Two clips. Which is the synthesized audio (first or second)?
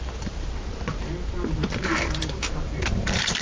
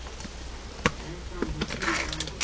first